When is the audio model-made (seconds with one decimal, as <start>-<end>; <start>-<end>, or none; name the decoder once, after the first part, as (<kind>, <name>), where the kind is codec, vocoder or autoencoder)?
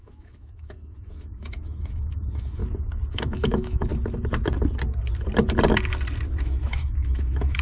0.0-2.6 (autoencoder, DAC-VAE); 3.1-3.9; 6.4-7.6